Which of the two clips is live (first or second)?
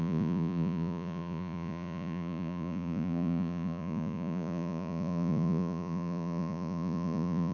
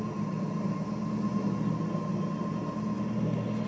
second